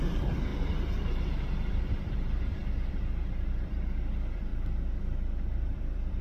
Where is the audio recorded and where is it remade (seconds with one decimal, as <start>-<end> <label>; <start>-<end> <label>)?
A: 0.0-0.5 remade; 0.5-1.7 recorded; 1.7-4.5 remade; 4.5-5.0 recorded; 5.0-6.2 remade